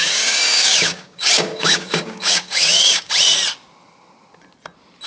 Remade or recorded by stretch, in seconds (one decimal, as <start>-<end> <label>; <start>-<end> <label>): 0.0-3.1 remade; 3.1-5.1 recorded